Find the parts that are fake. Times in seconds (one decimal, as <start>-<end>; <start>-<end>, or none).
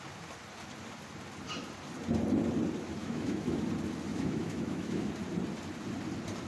3.0-3.6; 4.1-5.1